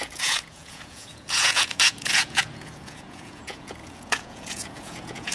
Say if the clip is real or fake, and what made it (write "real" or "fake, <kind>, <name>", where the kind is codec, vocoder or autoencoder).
fake, vocoder, Vocos